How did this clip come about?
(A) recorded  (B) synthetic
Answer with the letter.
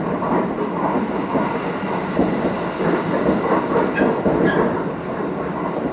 A